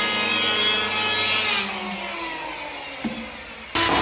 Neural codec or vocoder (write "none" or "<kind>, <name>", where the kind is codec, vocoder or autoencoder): none